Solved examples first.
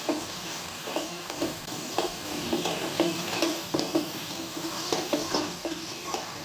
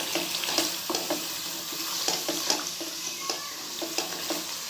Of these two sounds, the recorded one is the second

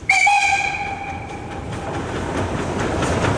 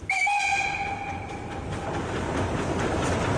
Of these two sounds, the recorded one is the second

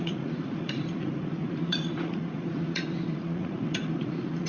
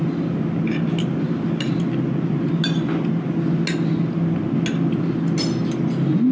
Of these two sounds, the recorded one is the second